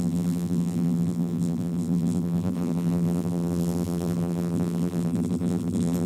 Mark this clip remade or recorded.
remade